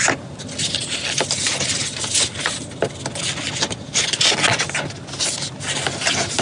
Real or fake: real